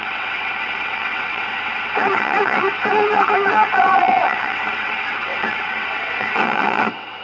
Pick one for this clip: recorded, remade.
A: remade